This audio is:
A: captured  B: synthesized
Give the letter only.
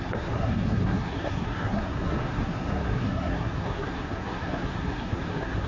B